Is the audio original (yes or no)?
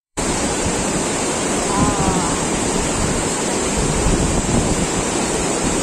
no